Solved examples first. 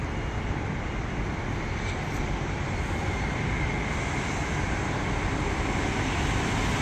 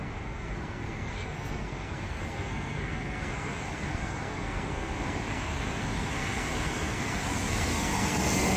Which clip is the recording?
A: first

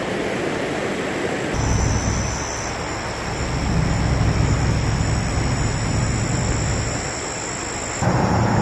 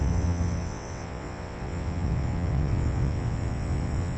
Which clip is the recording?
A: first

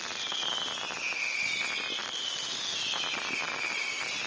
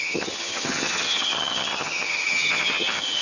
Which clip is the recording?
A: first